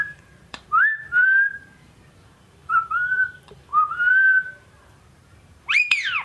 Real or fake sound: fake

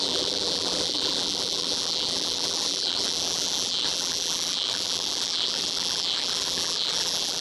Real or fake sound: fake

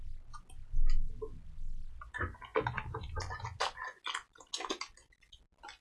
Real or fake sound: real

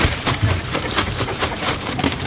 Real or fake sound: fake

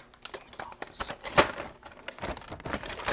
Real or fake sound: real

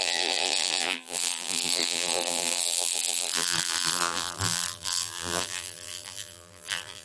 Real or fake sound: fake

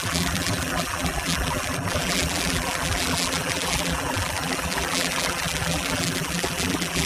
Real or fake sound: fake